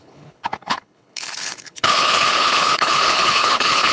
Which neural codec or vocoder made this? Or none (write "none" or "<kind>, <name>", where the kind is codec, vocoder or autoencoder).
codec, HILCodec